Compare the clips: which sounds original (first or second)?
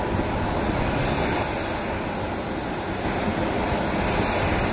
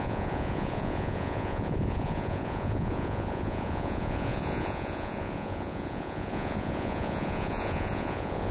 first